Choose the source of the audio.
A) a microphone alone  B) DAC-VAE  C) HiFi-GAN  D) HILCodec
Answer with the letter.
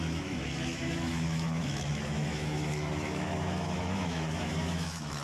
B